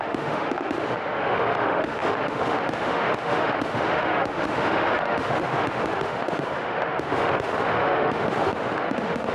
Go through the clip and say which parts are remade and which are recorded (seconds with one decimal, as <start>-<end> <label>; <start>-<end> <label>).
0.0-9.3 remade

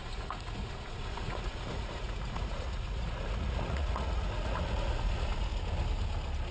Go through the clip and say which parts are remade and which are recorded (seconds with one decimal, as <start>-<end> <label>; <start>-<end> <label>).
0.0-5.5 remade; 5.5-6.5 recorded

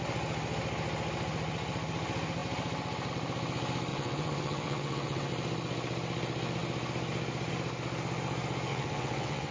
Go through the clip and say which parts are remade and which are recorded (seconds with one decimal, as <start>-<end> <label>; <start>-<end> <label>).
0.0-3.9 recorded; 3.9-5.3 remade; 5.3-8.7 recorded; 8.7-9.5 remade

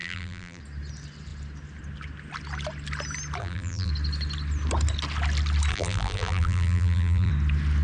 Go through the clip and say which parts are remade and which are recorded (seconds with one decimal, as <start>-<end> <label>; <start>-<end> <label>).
0.0-0.6 remade; 0.6-3.4 recorded; 3.4-3.9 remade; 3.9-5.7 recorded; 5.7-7.3 remade; 7.3-7.8 recorded

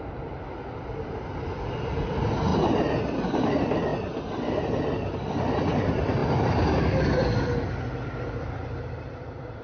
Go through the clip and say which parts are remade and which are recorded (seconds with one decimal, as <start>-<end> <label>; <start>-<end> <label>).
0.0-2.5 remade; 2.5-3.5 recorded; 3.5-3.9 remade; 3.9-5.1 recorded; 5.1-9.6 remade

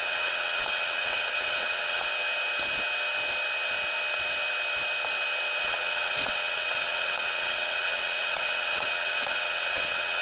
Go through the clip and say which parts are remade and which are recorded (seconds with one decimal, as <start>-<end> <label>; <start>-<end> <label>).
0.0-2.1 remade; 2.1-5.6 recorded; 5.6-10.2 remade